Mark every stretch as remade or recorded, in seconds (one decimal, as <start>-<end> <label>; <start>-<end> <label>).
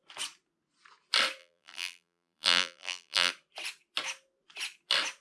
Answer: 0.0-1.4 recorded; 1.4-3.3 remade; 3.3-5.2 recorded